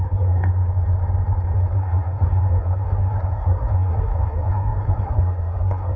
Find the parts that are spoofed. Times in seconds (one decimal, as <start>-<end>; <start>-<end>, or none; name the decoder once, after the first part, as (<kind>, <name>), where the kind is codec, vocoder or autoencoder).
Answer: 0.0-0.5 (codec, SNAC); 1.7-6.0